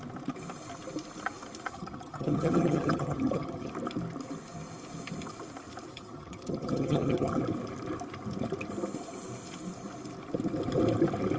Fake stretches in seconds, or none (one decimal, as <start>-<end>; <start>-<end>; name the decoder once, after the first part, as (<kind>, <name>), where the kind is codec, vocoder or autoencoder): 1.7-3.7 (vocoder, HiFi-GAN); 5.9-7.4

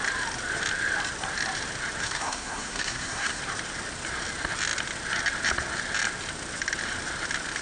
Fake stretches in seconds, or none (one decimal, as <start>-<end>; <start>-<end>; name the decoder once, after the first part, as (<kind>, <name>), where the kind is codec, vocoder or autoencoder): 2.0-3.4 (codec, SNAC)

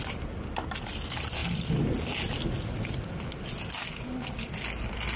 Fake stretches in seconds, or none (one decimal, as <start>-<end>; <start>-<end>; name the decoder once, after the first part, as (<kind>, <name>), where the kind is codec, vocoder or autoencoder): none

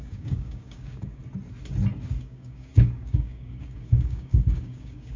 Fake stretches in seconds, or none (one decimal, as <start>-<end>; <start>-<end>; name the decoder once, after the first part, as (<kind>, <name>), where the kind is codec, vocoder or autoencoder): 0.0-1.2 (codec, DAC); 2.2-5.2

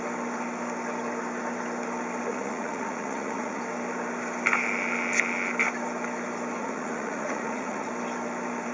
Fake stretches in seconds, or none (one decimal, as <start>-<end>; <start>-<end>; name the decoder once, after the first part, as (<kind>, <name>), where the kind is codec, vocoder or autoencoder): 2.3-3.6 (vocoder, Vocos); 6.6-7.9

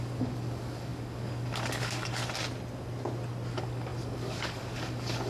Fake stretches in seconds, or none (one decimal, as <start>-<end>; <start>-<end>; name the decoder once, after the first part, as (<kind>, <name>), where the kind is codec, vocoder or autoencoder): 0.0-2.2 (codec, DAC); 3.5-5.3